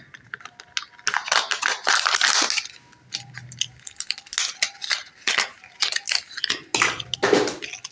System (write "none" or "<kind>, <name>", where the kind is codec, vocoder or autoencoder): none